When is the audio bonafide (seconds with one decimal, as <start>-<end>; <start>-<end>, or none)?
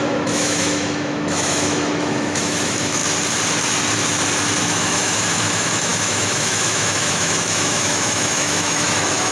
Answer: 3.0-4.6